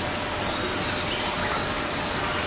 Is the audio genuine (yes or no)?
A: yes